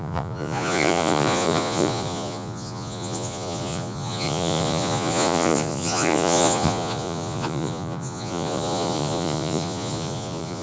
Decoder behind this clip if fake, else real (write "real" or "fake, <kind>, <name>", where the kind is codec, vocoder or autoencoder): fake, vocoder, Vocos